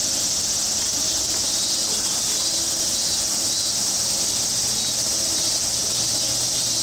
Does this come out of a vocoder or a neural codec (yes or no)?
no